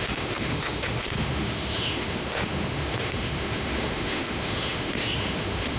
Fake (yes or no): yes